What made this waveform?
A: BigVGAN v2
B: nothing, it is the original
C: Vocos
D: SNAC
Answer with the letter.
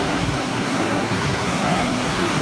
D